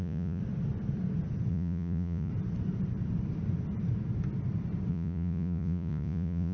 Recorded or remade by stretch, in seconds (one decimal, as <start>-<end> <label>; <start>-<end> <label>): 0.0-0.4 remade; 0.4-1.5 recorded; 1.5-2.3 remade; 2.3-4.9 recorded; 4.9-6.5 remade